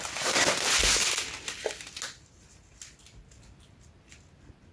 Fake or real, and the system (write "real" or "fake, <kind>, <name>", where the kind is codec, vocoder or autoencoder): real